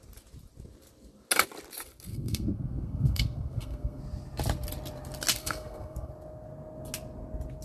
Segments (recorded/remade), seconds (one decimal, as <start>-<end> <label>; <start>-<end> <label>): 0.0-2.1 recorded; 2.1-4.0 remade; 4.0-5.4 recorded; 5.4-6.1 remade; 6.1-7.6 recorded